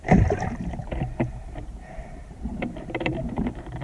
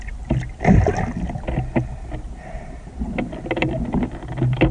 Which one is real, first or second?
second